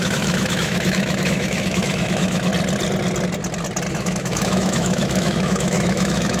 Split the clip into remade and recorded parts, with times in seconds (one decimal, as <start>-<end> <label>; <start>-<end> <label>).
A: 0.0-2.5 remade; 2.5-3.9 recorded; 3.9-6.4 remade